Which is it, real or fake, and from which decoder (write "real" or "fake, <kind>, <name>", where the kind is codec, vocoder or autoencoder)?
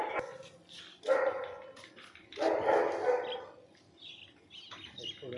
real